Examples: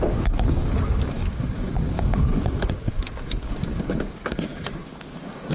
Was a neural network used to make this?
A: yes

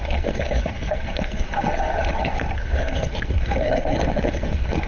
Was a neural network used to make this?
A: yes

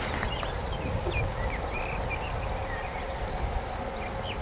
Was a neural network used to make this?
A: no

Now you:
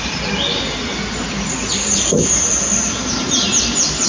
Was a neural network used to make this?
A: no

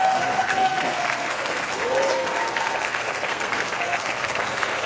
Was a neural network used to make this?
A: yes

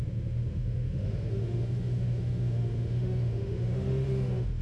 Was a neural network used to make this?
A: yes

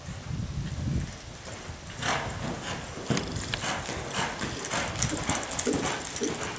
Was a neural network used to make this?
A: no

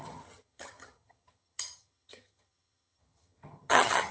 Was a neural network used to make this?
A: yes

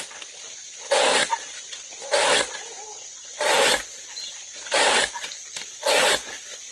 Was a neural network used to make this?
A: no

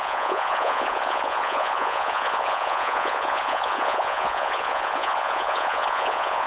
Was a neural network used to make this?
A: yes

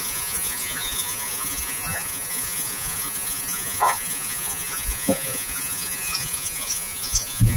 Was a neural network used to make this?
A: yes